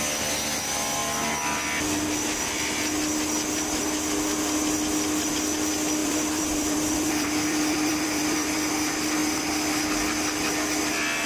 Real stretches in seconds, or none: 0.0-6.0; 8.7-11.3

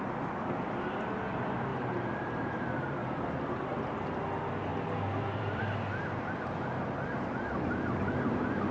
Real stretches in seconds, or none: 0.0-1.7; 4.2-4.7; 5.6-8.7